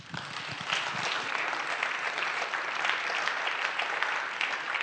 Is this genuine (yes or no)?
yes